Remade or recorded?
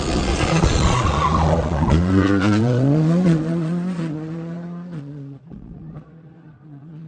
remade